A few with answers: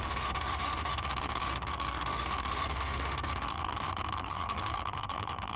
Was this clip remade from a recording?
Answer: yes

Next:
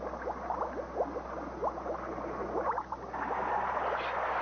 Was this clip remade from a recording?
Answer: no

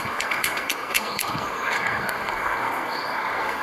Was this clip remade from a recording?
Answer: yes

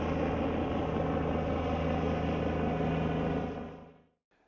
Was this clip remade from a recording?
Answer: no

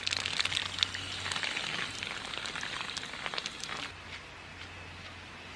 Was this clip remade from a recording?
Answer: no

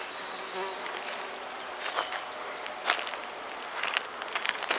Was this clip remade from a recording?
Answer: no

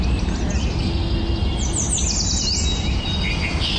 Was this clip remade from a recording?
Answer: no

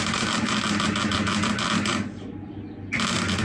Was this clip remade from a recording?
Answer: no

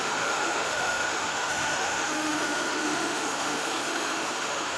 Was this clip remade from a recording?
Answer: yes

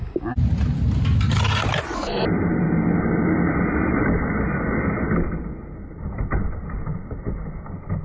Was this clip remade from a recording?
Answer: no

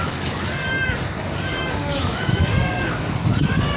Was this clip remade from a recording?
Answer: yes